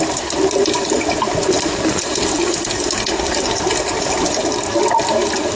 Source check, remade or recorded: recorded